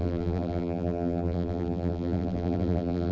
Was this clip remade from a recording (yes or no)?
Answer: yes